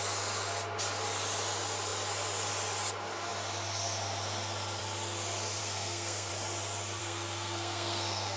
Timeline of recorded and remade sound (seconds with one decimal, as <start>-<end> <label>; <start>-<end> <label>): 0.0-5.6 recorded; 5.6-6.3 remade; 6.3-7.0 recorded; 7.0-8.4 remade